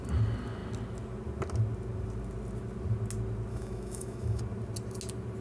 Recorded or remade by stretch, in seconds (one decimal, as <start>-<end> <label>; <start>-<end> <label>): 0.0-3.5 recorded; 3.5-4.4 remade; 4.4-5.4 recorded